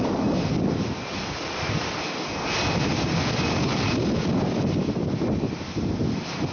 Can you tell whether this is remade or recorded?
remade